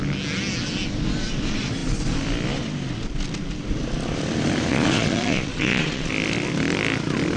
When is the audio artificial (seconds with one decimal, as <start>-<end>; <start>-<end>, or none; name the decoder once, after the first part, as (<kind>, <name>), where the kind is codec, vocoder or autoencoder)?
4.7-6.1 (vocoder, Vocos)